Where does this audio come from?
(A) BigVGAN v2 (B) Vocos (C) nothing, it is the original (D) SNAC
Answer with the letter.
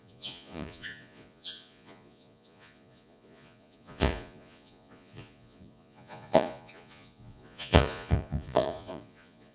B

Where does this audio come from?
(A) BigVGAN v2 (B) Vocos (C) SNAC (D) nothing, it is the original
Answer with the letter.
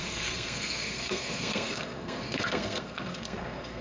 C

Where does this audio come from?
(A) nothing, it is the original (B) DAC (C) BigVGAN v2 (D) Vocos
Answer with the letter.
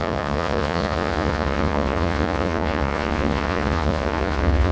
D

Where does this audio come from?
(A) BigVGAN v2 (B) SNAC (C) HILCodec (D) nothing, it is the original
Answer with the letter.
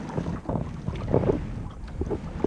D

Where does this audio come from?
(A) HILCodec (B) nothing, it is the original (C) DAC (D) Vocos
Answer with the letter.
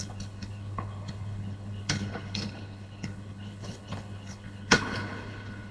A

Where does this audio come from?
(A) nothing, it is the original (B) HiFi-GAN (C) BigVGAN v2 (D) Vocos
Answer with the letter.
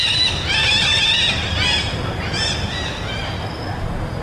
A